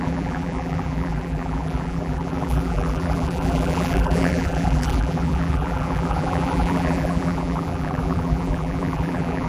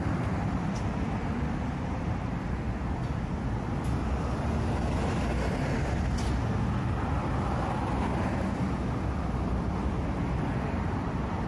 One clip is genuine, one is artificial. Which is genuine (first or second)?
second